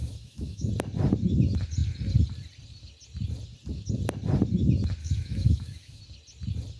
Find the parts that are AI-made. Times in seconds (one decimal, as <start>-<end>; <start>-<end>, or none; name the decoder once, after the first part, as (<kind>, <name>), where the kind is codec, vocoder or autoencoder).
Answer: 0.0-0.7 (autoencoder, DAC-VAE); 5.0-6.0